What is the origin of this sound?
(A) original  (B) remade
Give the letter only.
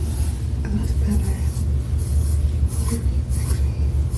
A